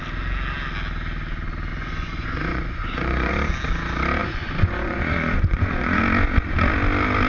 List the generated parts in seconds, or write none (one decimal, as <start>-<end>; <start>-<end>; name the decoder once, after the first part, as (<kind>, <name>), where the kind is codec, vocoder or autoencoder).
1.7-3.3 (vocoder, Vocos); 4.2-6.0